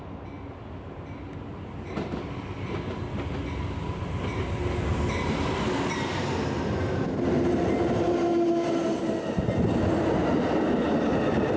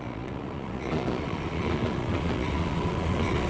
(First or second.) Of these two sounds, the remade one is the second